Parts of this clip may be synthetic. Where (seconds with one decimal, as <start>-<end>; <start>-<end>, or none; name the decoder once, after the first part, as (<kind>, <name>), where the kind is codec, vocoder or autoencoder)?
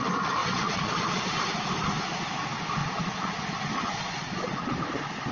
0.4-1.3 (vocoder, Vocos); 2.8-3.4; 3.9-4.7